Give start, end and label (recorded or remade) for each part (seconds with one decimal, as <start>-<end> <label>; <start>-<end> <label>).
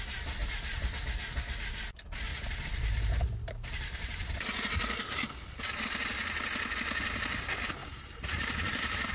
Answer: 0.0-0.4 recorded; 0.4-0.9 remade; 0.9-2.3 recorded; 2.3-4.8 remade; 4.8-7.8 recorded; 7.8-9.1 remade